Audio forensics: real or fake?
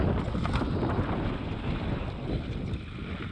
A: real